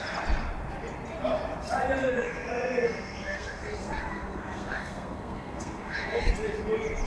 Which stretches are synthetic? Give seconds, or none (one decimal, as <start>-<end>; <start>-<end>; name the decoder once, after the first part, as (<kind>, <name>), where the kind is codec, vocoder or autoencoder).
2.0-6.3 (codec, SNAC)